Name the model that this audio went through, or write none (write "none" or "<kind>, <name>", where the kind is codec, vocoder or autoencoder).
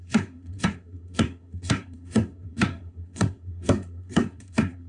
codec, SNAC